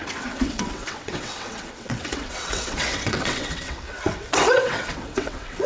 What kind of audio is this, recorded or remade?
remade